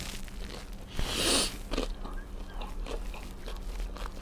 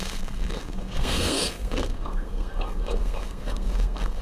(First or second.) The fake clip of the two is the second